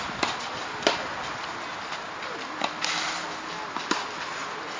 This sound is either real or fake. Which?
real